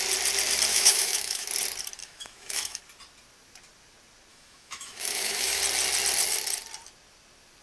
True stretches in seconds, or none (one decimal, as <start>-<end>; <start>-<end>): 0.0-0.7; 1.5-2.0; 2.8-4.3; 5.6-7.6